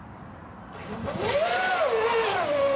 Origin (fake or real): real